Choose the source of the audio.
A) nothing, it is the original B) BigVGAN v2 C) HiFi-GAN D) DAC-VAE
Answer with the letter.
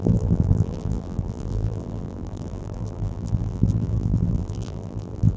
B